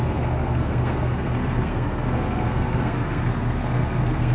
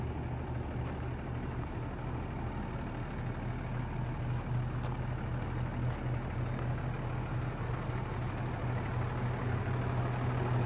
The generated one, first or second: first